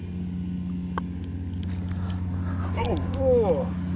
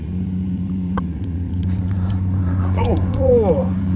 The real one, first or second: first